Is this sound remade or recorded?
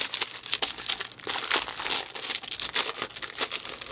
recorded